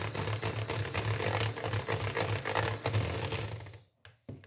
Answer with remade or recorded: recorded